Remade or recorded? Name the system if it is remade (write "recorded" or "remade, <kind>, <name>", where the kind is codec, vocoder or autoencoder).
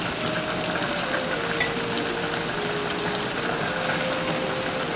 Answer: recorded